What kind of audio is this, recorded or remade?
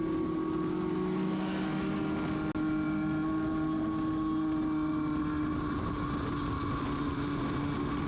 recorded